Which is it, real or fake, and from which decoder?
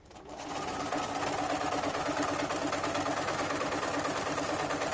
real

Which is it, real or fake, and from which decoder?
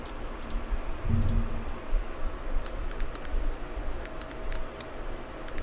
real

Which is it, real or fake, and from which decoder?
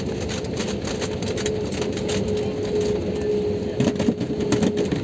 real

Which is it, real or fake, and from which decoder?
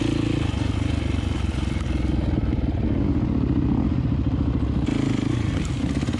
real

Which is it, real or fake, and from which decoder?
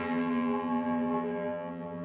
fake, vocoder, BigVGAN v2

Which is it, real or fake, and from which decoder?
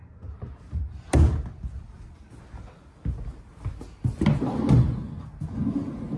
real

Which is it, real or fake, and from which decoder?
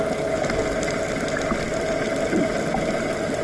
real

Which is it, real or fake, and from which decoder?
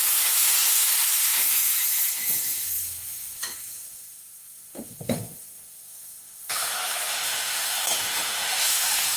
fake, autoencoder, DAC-VAE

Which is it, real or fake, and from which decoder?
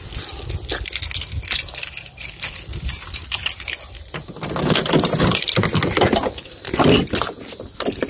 real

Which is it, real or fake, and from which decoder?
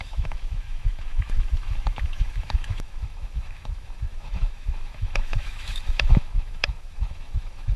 fake, autoencoder, DAC-VAE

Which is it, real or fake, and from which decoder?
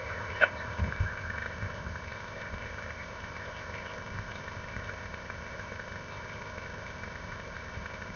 fake, codec, ZipCodec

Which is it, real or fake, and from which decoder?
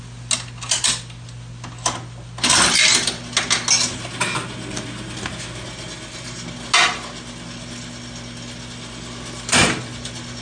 real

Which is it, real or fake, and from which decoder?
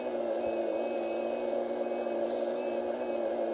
real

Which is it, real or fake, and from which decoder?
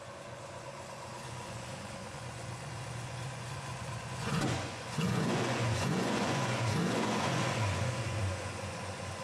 fake, vocoder, Vocos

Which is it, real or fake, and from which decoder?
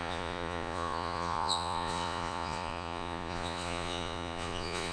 fake, vocoder, Vocos